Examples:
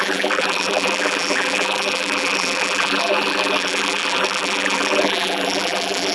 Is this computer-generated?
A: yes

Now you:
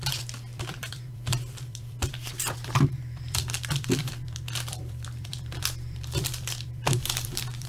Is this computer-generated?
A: yes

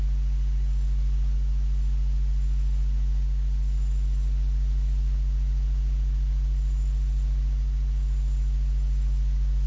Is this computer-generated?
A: no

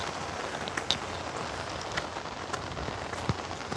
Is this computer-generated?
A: no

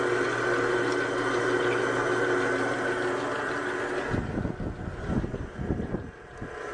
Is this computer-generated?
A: no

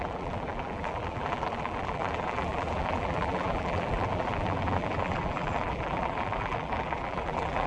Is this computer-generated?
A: yes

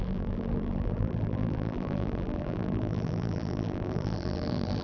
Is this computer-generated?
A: yes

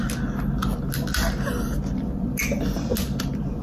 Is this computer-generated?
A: no